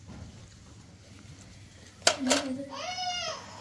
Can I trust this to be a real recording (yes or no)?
yes